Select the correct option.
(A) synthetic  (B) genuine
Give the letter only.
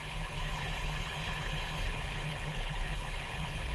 A